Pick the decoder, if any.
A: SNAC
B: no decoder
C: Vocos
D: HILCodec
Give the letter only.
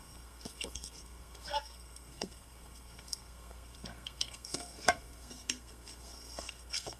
A